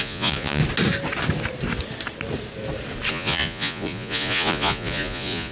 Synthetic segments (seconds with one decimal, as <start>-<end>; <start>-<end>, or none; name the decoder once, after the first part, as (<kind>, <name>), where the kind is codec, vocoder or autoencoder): 0.0-0.6 (vocoder, Vocos); 3.1-5.5